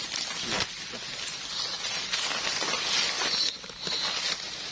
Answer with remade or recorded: recorded